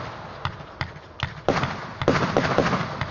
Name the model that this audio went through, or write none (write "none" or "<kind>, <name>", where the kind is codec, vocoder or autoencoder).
none